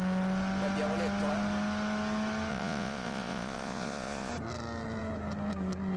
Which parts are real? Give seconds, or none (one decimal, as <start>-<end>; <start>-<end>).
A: 0.0-2.5; 4.3-6.0